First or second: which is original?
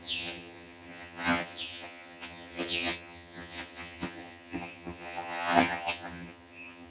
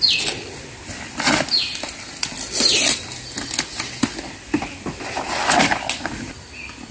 second